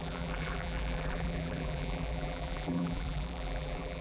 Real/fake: fake